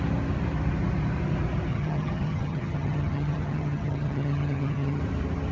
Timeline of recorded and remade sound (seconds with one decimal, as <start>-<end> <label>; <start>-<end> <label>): 0.0-1.7 recorded; 1.7-5.0 remade; 5.0-5.5 recorded